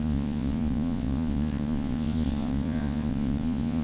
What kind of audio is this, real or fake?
fake